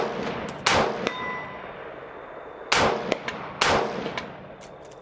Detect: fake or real real